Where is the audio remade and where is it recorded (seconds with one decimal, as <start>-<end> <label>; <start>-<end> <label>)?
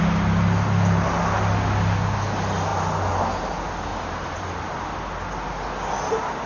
0.0-3.9 recorded; 3.9-4.6 remade; 4.6-6.5 recorded